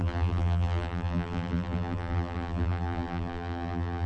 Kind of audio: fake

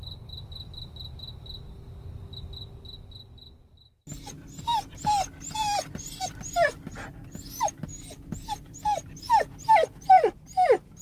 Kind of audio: real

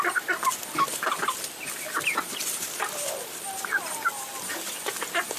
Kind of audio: fake